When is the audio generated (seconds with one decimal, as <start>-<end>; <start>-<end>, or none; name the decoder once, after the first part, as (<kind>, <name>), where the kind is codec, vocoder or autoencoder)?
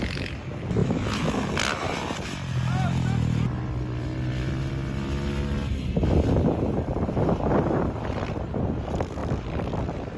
0.8-1.5 (autoencoder, DAC-VAE)